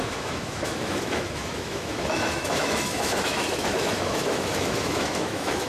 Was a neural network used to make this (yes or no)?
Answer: yes